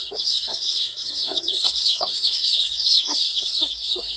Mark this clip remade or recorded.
remade